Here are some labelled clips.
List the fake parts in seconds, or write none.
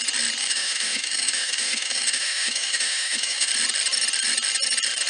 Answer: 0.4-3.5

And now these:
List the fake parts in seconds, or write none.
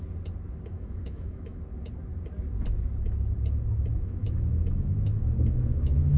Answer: 0.7-1.6; 3.9-6.2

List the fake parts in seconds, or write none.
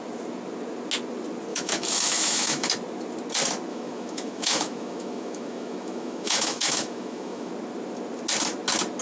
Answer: 1.5-2.7; 3.7-7.5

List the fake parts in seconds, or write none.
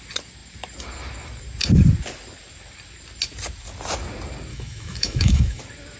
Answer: 4.5-5.6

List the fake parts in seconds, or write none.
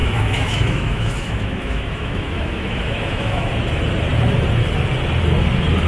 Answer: 0.0-3.5